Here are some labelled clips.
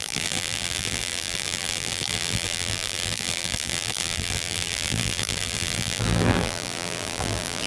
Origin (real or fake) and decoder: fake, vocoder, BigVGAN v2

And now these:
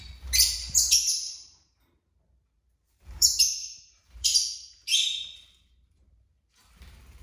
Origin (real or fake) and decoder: fake, vocoder, BigVGAN v2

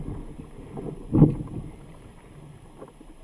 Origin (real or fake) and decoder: fake, vocoder, BigVGAN v2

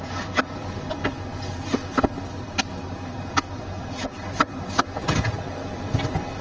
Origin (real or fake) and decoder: real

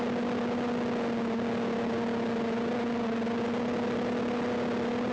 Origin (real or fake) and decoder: real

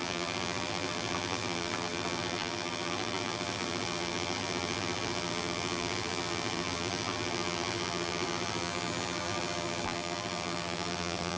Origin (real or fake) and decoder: fake, vocoder, BigVGAN v2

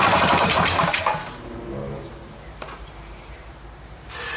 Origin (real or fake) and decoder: fake, vocoder, BigVGAN v2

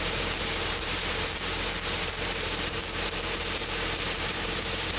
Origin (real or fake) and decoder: fake, vocoder, BigVGAN v2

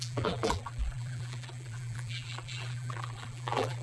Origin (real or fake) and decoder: fake, vocoder, BigVGAN v2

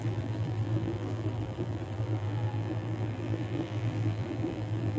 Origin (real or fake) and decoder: fake, vocoder, BigVGAN v2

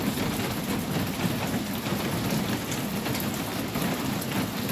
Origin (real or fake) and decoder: real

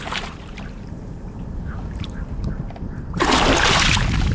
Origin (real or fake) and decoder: fake, vocoder, BigVGAN v2